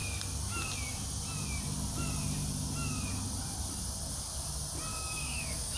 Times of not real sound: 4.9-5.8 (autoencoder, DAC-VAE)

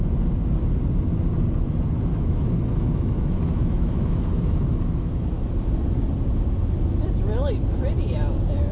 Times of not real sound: 2.1-5.5 (autoencoder, DAC-VAE)

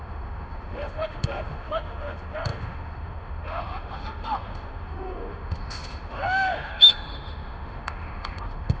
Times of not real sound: 0.0-8.8 (autoencoder, DAC-VAE)

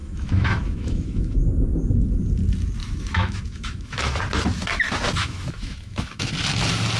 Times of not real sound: 0.0-1.4 (autoencoder, DAC-VAE); 2.8-4.2; 5.2-6.3

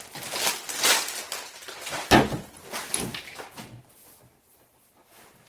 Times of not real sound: none

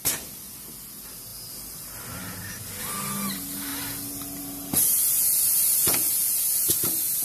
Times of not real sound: none

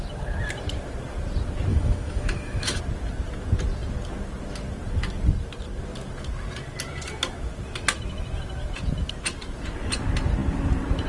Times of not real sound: 1.7-2.8 (autoencoder, DAC-VAE)

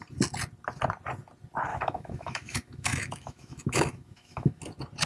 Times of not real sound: 1.7-4.6 (autoencoder, DAC-VAE)